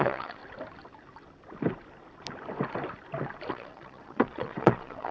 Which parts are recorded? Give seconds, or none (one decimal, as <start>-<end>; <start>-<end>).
0.4-3.5